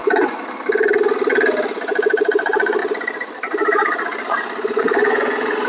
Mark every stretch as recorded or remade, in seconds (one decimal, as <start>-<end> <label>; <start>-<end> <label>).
0.0-2.3 recorded; 2.3-2.8 remade; 2.8-4.8 recorded; 4.8-5.7 remade

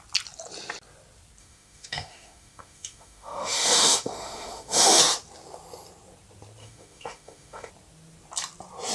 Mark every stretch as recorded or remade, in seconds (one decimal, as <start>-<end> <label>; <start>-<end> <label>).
0.0-1.4 recorded; 1.4-5.0 remade; 5.0-6.6 recorded; 6.6-7.7 remade; 7.7-8.9 recorded